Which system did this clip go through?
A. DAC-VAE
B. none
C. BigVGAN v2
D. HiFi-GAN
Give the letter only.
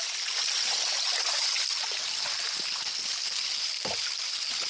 B